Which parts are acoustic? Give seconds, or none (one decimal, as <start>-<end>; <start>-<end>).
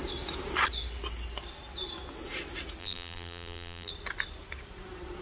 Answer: 0.0-2.8; 3.9-5.2